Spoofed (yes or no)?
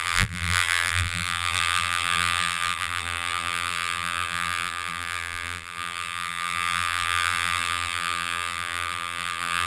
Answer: yes